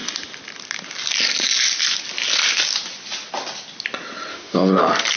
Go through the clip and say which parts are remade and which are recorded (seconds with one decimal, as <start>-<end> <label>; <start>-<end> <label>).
0.0-4.3 recorded; 4.3-4.8 remade; 4.8-5.2 recorded